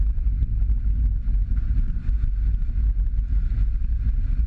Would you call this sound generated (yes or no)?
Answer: no